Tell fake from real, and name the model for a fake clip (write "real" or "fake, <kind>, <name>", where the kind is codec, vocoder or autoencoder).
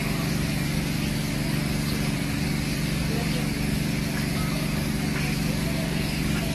fake, codec, DAC